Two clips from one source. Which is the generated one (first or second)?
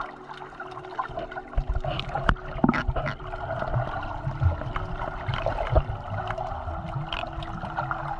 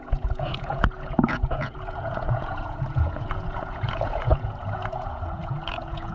second